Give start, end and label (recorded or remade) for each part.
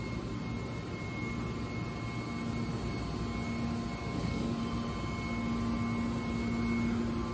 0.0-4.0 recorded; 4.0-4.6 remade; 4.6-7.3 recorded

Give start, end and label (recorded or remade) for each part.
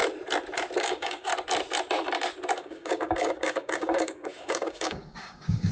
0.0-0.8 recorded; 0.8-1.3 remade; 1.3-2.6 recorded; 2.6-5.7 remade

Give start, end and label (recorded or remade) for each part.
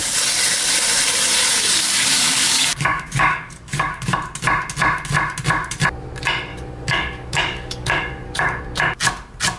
0.0-1.5 recorded; 1.5-4.1 remade; 4.1-6.5 recorded; 6.5-8.6 remade; 8.6-9.6 recorded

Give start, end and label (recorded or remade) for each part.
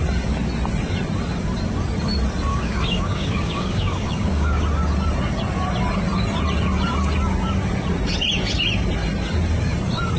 0.0-2.5 recorded; 2.5-4.6 remade; 4.6-10.2 recorded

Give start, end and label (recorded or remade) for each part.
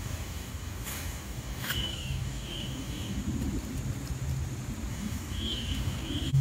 0.0-3.2 remade; 3.2-4.9 recorded; 4.9-6.4 remade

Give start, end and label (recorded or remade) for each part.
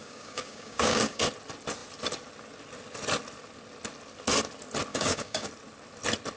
0.0-1.2 remade; 1.2-4.9 recorded; 4.9-5.5 remade; 5.5-6.4 recorded